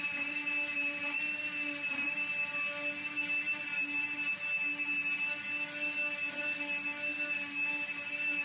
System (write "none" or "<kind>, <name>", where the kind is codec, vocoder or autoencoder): none